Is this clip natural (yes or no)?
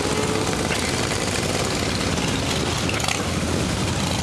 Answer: yes